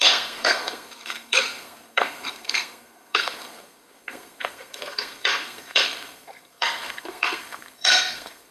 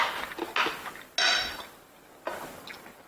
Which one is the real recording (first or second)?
second